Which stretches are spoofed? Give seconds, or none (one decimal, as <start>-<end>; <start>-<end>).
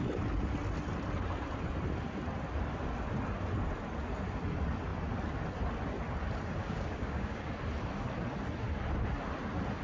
6.6-7.5